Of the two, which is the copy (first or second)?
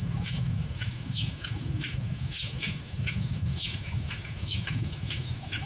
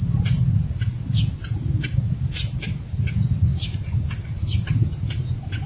first